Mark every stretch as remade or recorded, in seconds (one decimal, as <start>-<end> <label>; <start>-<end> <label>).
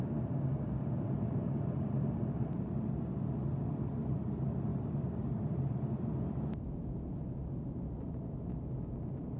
0.0-4.7 recorded; 4.7-6.1 remade; 6.1-9.4 recorded